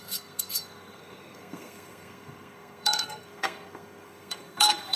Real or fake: fake